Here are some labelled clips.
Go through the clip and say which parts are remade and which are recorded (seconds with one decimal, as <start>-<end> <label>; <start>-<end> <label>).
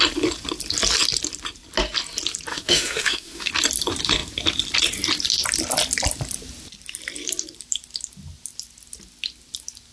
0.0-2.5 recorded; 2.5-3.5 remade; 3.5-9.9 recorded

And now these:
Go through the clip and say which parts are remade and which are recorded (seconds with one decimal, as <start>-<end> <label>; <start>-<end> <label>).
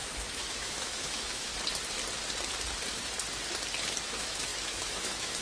0.0-1.5 remade; 1.5-4.1 recorded; 4.1-5.4 remade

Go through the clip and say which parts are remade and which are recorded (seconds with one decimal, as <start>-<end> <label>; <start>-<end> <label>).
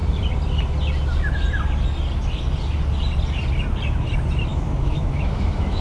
0.0-4.5 recorded; 4.5-5.8 remade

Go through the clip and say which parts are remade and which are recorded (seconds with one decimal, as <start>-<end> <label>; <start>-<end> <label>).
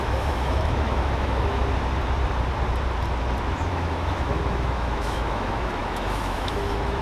0.0-1.6 remade; 1.6-3.6 recorded; 3.6-7.0 remade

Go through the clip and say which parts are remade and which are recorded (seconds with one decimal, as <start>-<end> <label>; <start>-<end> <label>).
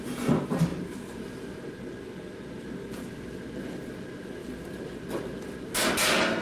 0.0-6.4 recorded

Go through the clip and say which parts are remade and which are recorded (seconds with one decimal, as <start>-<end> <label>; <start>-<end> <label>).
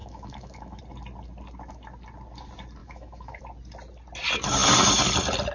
0.0-0.8 remade; 0.8-2.8 recorded; 2.8-3.4 remade; 3.4-5.5 recorded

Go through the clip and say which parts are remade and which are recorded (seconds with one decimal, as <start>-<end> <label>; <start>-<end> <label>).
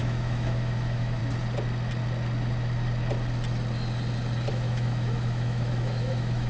0.0-1.2 remade; 1.2-4.5 recorded; 4.5-6.5 remade